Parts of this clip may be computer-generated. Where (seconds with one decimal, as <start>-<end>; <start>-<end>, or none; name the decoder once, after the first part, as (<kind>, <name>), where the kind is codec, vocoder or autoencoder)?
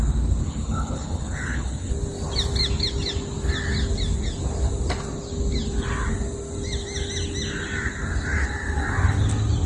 0.4-1.9 (codec, HILCodec)